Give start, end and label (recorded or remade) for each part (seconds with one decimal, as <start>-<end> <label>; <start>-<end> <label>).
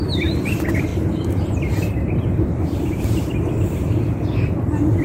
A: 0.0-0.9 recorded; 0.9-3.0 remade; 3.0-5.0 recorded